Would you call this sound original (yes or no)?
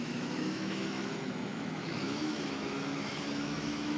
no